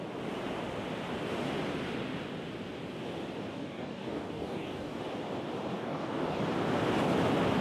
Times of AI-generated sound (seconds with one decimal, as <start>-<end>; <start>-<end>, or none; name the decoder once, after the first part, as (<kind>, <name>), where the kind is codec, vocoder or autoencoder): 3.5-5.0 (codec, DAC); 5.7-6.4